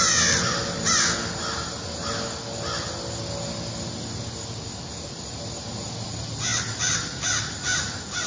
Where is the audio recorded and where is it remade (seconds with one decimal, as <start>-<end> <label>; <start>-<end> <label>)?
0.0-8.3 recorded